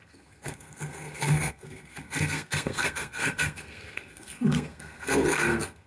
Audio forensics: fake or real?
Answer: fake